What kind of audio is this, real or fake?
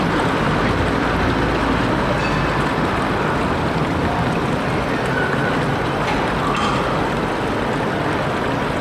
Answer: real